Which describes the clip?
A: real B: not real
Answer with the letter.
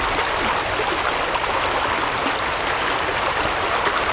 A